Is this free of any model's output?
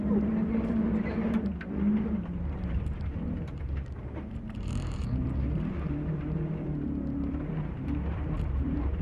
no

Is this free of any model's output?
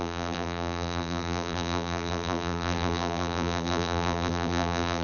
no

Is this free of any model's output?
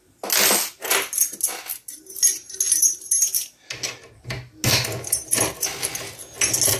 yes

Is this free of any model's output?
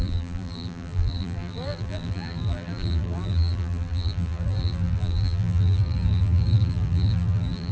no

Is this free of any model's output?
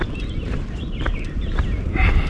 yes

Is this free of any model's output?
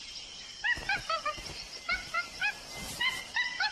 no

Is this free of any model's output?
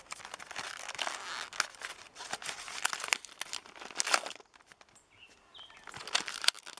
yes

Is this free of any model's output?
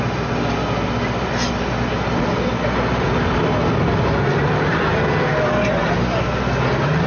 yes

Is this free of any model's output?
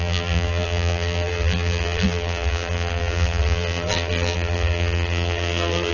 no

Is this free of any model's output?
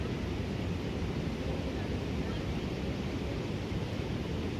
no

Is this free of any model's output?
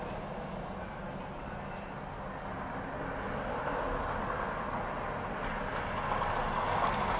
yes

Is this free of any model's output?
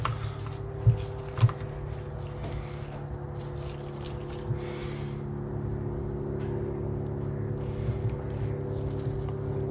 yes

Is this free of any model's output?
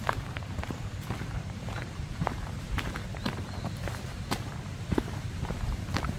no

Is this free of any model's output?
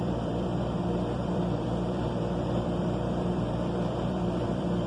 no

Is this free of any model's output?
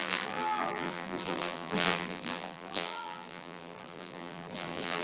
no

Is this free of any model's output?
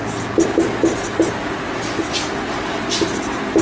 yes